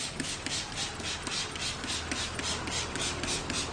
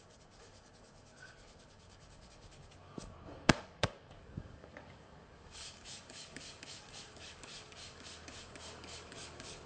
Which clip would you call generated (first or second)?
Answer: second